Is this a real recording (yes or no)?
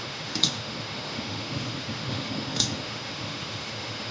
no